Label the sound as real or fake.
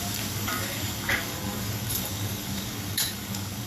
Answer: fake